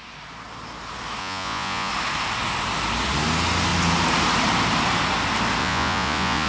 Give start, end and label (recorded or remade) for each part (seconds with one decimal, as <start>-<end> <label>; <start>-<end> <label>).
0.0-1.2 recorded; 1.2-1.9 remade; 1.9-5.6 recorded; 5.6-6.5 remade